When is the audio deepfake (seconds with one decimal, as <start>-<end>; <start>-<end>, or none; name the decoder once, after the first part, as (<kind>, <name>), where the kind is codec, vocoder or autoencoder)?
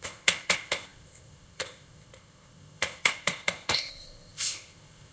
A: 0.0-5.1 (codec, ZipCodec)